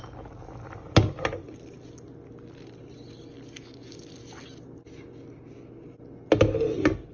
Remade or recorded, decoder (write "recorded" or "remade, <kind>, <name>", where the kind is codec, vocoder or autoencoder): recorded